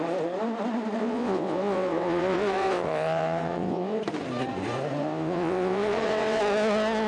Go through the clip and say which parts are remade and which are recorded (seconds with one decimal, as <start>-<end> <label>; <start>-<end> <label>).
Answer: 0.0-1.0 recorded; 1.0-4.0 remade; 4.0-5.0 recorded; 5.0-6.4 remade; 6.4-7.1 recorded